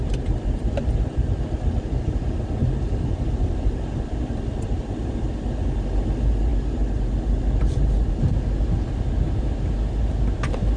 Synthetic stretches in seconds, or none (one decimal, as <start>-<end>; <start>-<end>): none